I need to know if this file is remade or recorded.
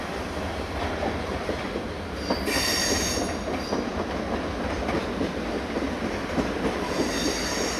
recorded